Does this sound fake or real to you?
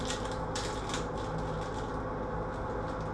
real